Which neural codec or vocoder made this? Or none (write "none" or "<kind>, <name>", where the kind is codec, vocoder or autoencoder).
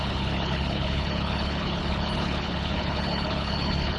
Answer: codec, HILCodec